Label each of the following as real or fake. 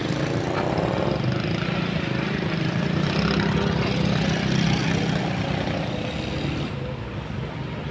real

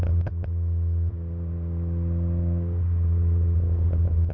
real